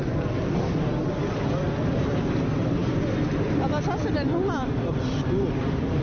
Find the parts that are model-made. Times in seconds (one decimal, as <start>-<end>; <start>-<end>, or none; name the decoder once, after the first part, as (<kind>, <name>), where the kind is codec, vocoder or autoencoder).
1.2-2.0 (vocoder, BigVGAN v2); 2.8-5.5